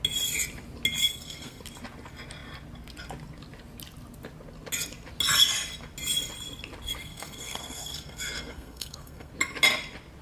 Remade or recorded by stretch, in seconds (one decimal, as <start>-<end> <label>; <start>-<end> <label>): 0.0-1.0 recorded; 1.0-1.6 remade; 1.6-7.0 recorded; 7.0-9.3 remade; 9.3-10.2 recorded